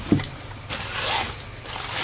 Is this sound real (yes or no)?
yes